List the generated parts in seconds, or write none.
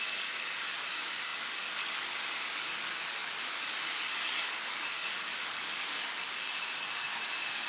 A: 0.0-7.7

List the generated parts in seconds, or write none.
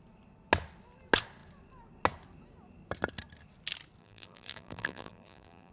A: 4.0-5.7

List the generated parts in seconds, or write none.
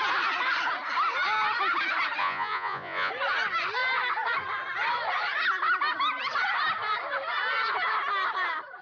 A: 2.2-3.1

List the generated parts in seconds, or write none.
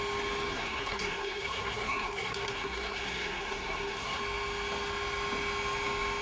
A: 0.5-4.2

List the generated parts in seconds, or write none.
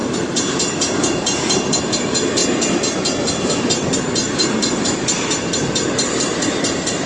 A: 0.0-2.4; 3.7-7.1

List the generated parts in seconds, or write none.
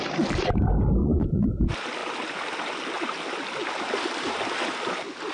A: 1.0-1.5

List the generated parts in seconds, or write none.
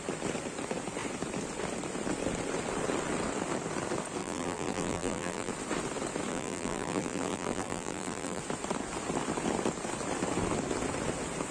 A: 4.2-5.5; 6.3-8.4